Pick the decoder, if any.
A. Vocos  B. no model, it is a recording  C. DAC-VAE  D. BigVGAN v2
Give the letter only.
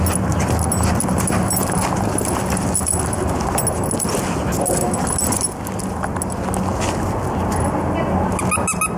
B